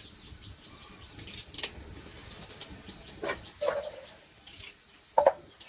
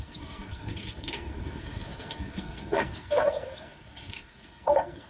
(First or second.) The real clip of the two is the first